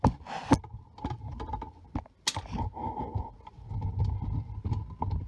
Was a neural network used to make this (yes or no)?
no